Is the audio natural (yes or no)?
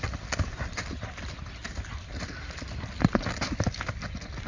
yes